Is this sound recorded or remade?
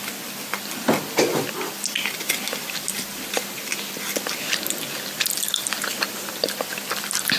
recorded